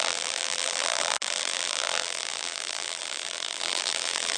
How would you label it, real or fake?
fake